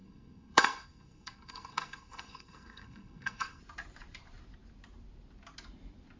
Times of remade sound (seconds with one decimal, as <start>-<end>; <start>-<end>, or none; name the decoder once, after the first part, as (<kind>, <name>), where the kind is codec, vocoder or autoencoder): 0.0-3.6 (codec, SNAC)